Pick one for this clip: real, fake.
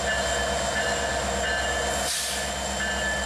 real